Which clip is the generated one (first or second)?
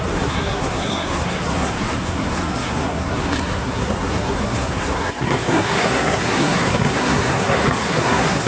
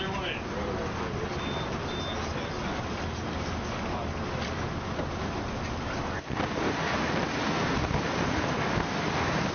first